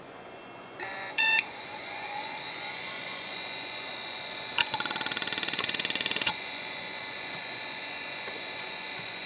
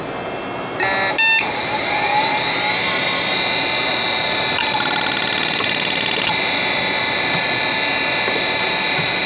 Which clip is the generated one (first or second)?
first